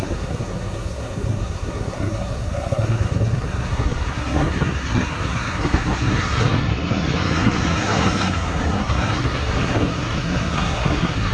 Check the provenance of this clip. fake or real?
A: fake